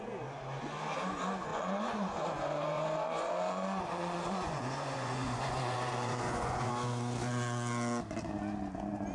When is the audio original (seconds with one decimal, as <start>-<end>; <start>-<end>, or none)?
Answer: 0.0-1.5; 6.7-9.1